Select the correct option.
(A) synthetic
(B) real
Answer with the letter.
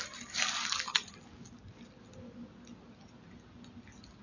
B